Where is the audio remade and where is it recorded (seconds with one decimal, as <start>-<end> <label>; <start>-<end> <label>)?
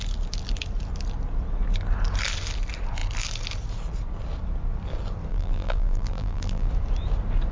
0.0-5.3 recorded; 5.3-6.7 remade; 6.7-7.5 recorded